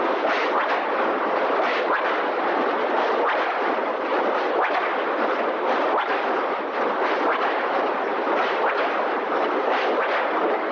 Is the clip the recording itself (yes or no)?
yes